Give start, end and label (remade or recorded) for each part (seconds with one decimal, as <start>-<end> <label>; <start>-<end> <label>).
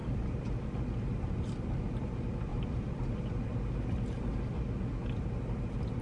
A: 0.0-0.7 remade; 0.7-2.5 recorded; 2.5-3.4 remade; 3.4-6.0 recorded